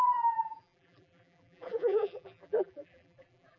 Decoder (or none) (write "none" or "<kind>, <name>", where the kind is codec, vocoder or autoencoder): vocoder, BigVGAN v2